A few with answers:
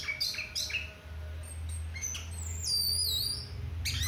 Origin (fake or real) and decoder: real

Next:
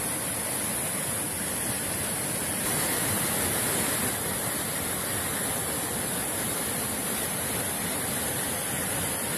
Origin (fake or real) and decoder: real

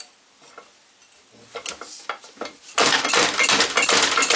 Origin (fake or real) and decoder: real